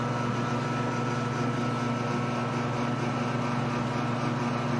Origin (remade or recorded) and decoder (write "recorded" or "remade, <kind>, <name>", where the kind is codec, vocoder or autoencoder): recorded